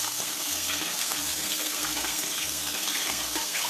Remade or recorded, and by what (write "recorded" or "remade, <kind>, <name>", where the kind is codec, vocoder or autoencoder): remade, codec, SNAC